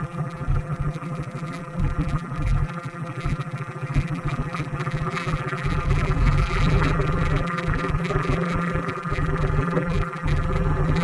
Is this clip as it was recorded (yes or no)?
no